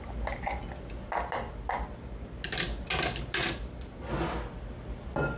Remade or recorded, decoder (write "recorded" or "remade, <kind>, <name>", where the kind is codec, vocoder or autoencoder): recorded